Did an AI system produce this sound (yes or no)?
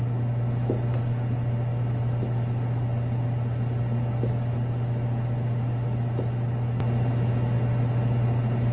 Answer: no